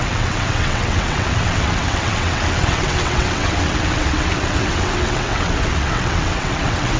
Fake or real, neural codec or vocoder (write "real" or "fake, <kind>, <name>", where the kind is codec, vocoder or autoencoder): fake, vocoder, WaveNeXt